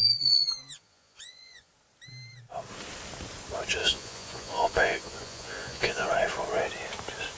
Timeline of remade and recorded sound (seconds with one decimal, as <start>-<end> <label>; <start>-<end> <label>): 0.0-1.7 remade; 1.7-3.8 recorded; 3.8-6.1 remade; 6.1-7.4 recorded